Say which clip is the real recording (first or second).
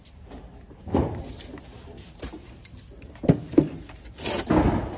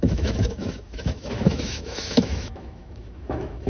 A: first